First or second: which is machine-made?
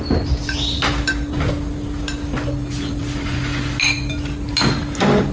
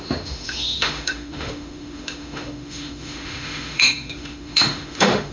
second